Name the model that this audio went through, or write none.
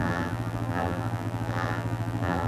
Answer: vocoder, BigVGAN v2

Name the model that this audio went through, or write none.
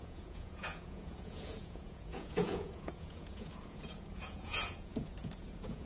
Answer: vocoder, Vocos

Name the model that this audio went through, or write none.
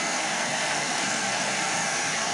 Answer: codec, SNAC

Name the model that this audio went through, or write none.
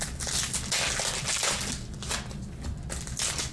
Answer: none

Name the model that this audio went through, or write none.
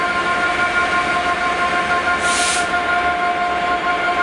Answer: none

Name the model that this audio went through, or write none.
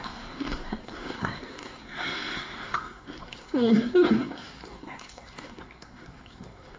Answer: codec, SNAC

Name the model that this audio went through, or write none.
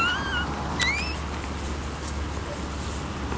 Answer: none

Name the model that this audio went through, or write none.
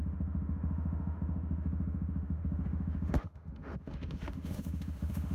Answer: autoencoder, DAC-VAE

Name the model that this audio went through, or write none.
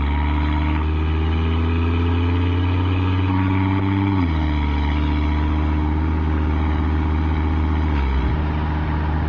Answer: none